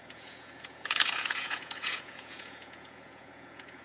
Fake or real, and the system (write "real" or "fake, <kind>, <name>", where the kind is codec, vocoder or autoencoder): fake, vocoder, Vocos